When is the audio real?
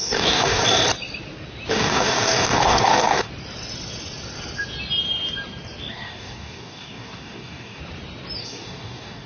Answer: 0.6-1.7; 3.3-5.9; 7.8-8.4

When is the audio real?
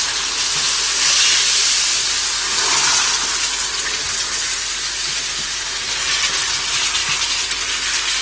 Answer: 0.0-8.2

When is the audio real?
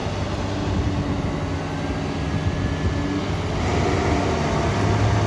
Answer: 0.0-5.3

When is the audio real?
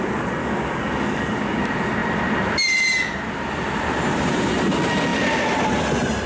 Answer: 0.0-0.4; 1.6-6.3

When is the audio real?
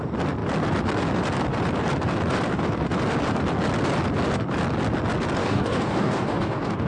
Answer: 0.0-5.4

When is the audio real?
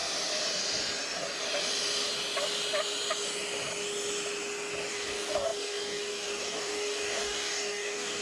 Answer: 0.0-4.9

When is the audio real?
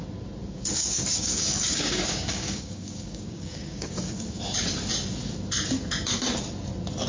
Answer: 0.0-0.4; 4.4-7.1